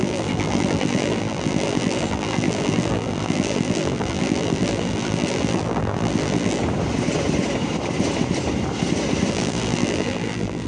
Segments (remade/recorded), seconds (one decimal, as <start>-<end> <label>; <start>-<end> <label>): 0.0-6.6 remade; 6.6-9.3 recorded; 9.3-10.7 remade

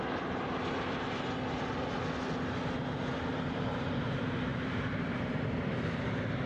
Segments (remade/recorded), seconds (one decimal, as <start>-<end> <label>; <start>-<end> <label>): 0.0-4.5 recorded; 4.5-5.4 remade; 5.4-6.5 recorded

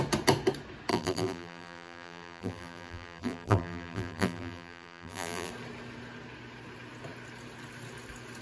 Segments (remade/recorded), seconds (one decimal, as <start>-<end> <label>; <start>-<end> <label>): 0.0-0.9 recorded; 0.9-5.5 remade; 5.5-8.4 recorded